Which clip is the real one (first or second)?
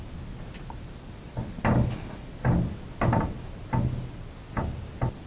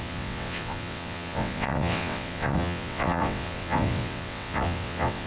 first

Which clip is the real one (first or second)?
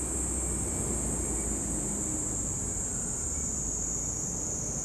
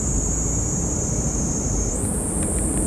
first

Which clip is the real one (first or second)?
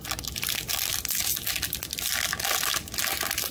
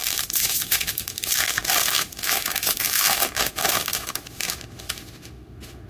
first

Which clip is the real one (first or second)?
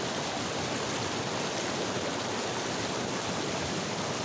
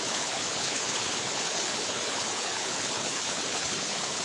first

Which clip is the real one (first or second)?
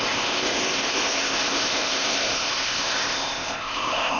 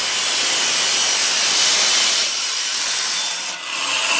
second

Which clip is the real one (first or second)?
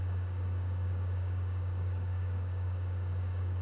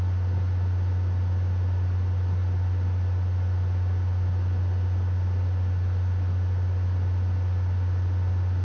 second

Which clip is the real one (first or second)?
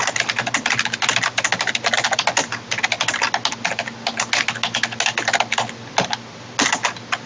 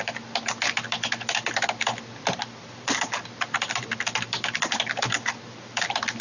first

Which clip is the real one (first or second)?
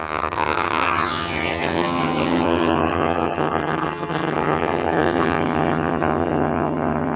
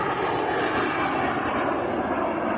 second